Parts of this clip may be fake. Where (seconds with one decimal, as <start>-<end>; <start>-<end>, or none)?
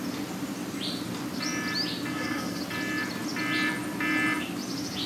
2.1-2.6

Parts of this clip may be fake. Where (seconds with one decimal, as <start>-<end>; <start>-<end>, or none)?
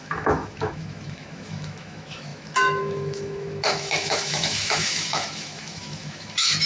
0.0-6.7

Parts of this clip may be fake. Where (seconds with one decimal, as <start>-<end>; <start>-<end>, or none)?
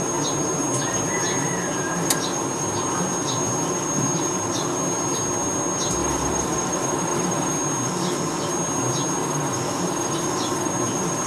6.0-7.5; 9.2-10.7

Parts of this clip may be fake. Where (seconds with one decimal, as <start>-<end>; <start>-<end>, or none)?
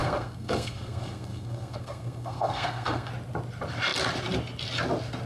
0.0-3.1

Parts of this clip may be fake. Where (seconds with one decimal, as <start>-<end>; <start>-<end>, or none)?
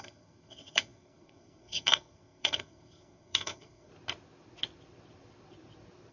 0.0-3.9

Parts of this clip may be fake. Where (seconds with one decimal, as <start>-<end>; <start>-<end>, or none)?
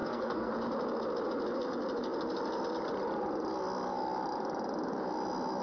0.0-0.5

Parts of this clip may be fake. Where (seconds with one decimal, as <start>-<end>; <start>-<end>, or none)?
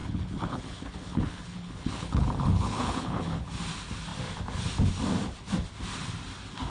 0.0-3.5